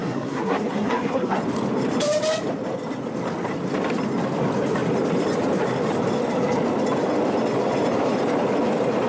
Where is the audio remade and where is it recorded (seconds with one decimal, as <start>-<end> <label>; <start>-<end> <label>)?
0.0-1.4 remade; 1.4-9.1 recorded